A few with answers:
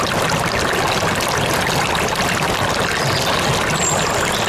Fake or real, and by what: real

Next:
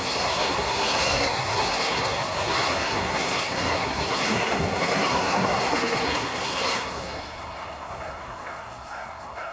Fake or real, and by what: fake, codec, SNAC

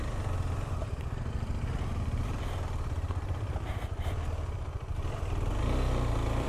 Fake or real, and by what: fake, vocoder, BigVGAN v2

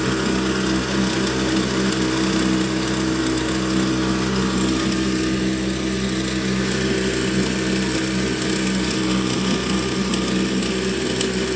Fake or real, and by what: real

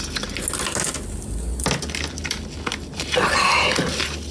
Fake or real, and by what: real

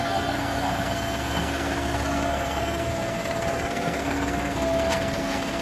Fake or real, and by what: fake, codec, SNAC